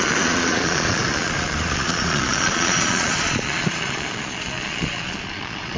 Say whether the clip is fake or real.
fake